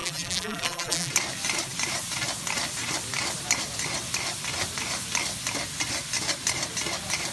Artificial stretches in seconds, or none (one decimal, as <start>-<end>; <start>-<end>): 0.0-1.1